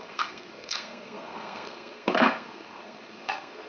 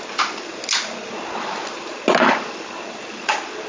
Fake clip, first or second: first